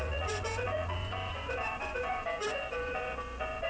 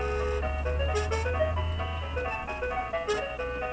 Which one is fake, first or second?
first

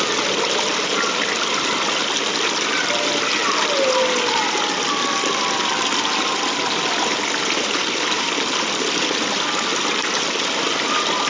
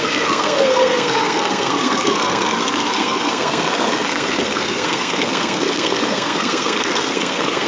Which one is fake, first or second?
second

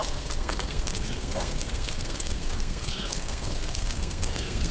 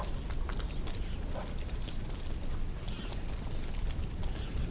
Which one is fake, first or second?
first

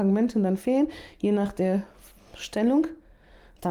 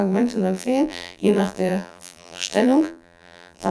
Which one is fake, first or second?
second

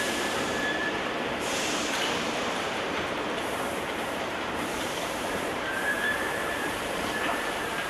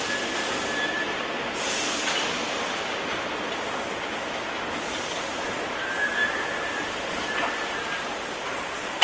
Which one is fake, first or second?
first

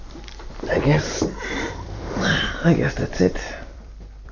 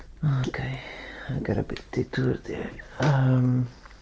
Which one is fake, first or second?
first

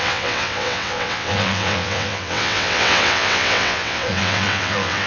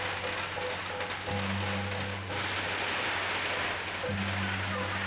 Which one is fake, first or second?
first